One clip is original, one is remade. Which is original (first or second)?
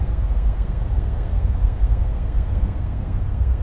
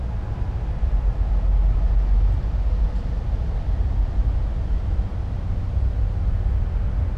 second